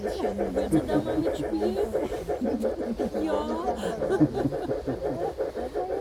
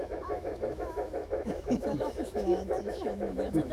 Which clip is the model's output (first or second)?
second